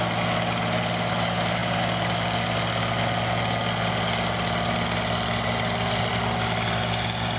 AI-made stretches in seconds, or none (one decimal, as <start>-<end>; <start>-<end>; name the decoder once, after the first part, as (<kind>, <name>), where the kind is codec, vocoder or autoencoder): none